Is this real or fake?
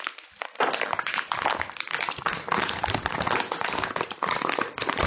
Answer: fake